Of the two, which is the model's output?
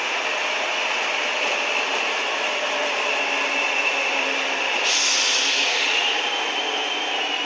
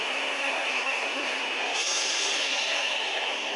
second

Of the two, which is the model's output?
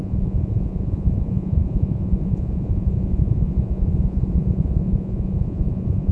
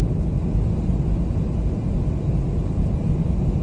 first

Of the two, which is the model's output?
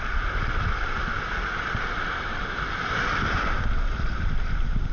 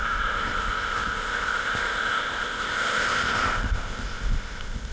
second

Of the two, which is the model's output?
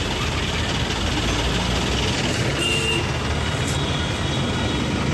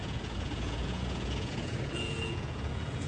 second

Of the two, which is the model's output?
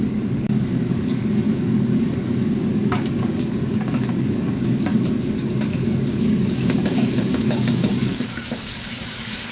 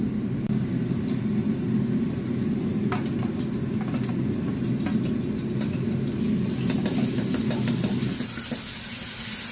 first